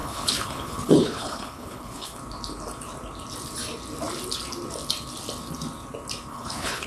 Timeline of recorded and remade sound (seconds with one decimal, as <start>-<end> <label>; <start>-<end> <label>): 0.0-2.2 remade; 2.2-6.3 recorded; 6.3-6.9 remade